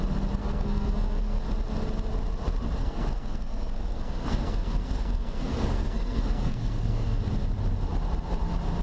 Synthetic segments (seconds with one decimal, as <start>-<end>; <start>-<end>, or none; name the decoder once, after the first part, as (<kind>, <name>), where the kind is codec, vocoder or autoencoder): 0.4-1.4 (codec, SNAC); 2.8-7.2